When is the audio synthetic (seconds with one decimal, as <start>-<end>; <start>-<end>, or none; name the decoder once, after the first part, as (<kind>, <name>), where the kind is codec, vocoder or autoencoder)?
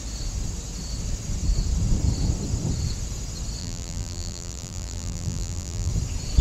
3.6-5.9 (vocoder, BigVGAN v2)